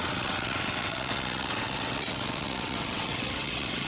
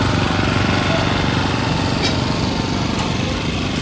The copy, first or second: first